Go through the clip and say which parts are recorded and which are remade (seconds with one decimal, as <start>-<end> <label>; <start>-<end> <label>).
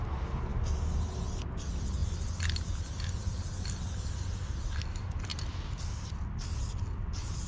0.0-7.5 recorded